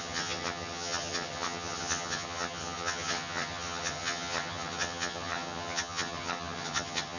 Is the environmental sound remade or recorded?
remade